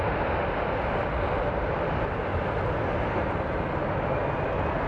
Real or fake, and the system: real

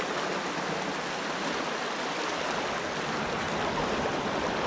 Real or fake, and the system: real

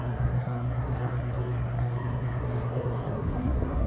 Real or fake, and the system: fake, codec, SNAC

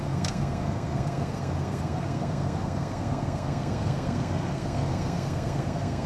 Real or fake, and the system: fake, codec, SNAC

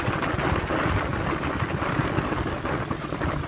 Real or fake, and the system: real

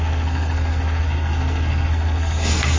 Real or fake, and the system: fake, codec, SNAC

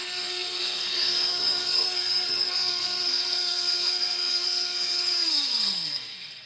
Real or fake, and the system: fake, codec, SNAC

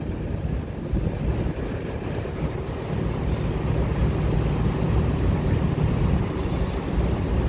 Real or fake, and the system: real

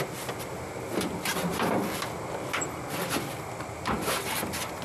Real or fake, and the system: real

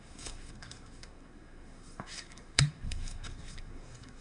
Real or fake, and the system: fake, codec, SNAC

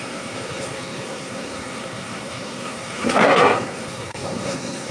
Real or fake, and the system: fake, codec, SNAC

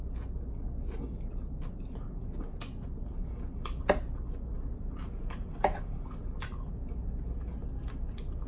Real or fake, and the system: real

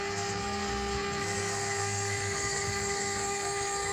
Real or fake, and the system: fake, codec, SNAC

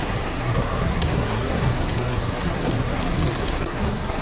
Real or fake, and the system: fake, codec, SNAC